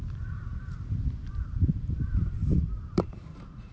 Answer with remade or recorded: remade